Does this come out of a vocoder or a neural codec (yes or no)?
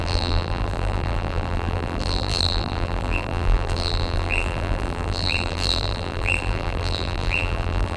yes